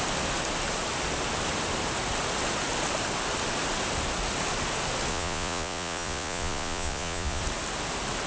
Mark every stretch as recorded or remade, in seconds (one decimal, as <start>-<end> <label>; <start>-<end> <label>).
0.0-5.1 recorded; 5.1-7.4 remade; 7.4-8.3 recorded